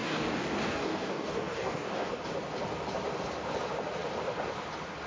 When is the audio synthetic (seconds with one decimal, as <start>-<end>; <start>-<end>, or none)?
0.0-2.2